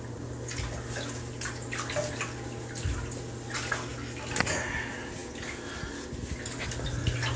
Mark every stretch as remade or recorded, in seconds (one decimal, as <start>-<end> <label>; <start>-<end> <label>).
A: 0.0-7.4 recorded